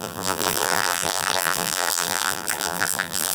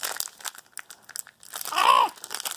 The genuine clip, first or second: second